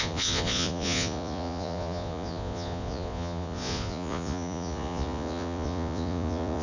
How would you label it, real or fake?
fake